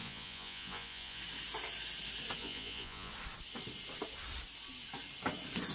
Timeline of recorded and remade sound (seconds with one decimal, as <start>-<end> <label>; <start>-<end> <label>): 0.0-1.2 remade; 1.2-2.4 recorded; 2.4-3.1 remade; 3.1-5.7 recorded